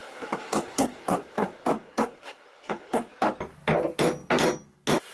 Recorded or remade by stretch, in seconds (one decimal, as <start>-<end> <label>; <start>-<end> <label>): 0.0-3.1 remade; 3.1-5.1 recorded